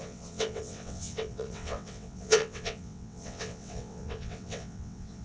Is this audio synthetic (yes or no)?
yes